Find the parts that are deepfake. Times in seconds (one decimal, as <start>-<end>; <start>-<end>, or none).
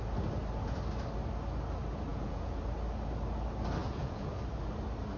2.1-2.6; 3.8-4.4